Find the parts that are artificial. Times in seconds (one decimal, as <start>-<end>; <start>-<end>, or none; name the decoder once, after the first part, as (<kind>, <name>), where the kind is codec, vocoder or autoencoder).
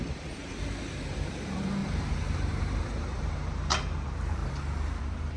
0.0-4.4 (vocoder, BigVGAN v2); 5.0-5.4